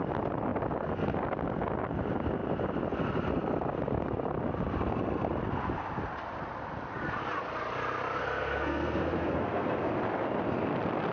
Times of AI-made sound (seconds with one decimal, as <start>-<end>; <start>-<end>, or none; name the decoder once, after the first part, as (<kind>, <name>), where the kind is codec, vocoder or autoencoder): 8.2-9.9 (codec, SNAC)